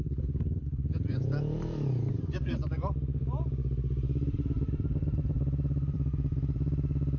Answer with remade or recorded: remade